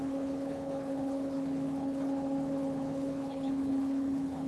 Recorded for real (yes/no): no